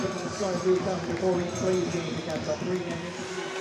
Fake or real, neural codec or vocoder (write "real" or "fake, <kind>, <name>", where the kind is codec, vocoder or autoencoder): real